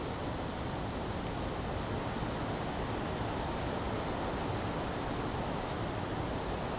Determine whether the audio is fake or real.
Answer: real